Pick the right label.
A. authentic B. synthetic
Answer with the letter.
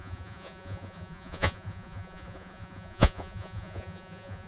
B